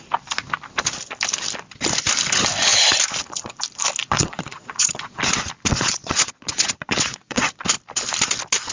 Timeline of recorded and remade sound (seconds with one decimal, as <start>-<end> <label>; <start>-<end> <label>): 0.0-4.0 recorded; 4.0-5.2 remade; 5.2-5.7 recorded; 5.7-7.4 remade; 7.4-8.7 recorded